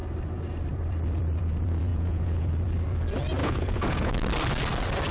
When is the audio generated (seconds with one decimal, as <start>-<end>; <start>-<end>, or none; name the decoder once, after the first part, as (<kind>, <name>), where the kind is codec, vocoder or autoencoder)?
1.9-2.5 (vocoder, Vocos); 3.4-4.1